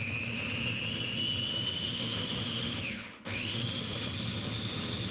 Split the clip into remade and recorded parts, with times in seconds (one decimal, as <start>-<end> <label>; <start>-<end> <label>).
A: 0.0-1.5 recorded; 1.5-3.8 remade; 3.8-5.1 recorded